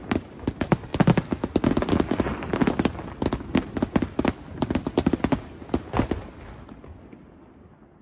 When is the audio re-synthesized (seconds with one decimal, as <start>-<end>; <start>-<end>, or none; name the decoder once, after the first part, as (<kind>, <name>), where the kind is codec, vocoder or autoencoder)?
none